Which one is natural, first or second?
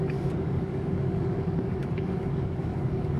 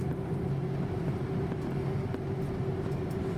second